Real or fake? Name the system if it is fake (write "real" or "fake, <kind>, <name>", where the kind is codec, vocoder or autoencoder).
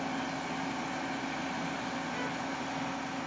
real